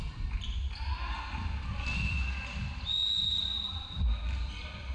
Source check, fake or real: real